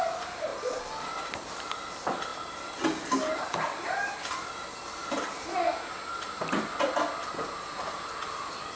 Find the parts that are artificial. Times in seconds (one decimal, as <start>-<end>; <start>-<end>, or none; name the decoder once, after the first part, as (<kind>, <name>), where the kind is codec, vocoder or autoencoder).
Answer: none